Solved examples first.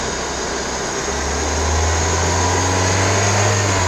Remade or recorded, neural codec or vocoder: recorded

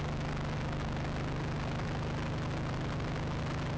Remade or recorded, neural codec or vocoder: recorded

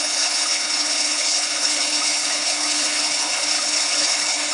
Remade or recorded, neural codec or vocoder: remade, codec, HILCodec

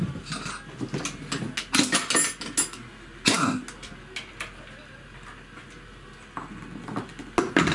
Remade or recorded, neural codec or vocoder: recorded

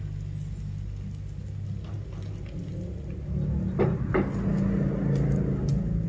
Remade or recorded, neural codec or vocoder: recorded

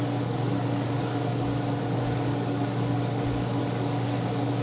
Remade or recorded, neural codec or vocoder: remade, codec, DAC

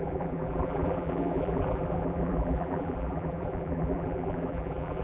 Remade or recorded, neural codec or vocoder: remade, vocoder, BigVGAN v2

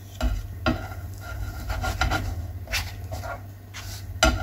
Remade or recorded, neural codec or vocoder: recorded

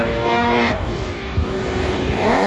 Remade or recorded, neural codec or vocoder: remade, codec, DAC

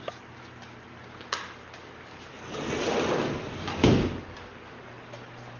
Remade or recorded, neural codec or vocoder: recorded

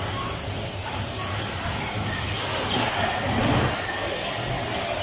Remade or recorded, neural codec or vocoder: recorded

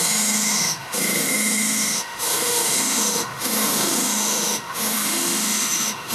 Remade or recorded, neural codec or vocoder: remade, autoencoder, DAC-VAE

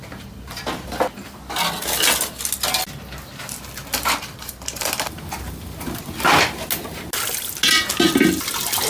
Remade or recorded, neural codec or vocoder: recorded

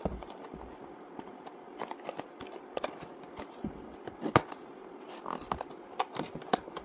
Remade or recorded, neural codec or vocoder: recorded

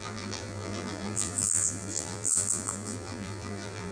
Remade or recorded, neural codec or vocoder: remade, vocoder, BigVGAN v2